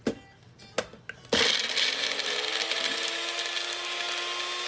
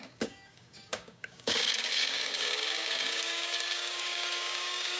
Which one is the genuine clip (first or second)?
first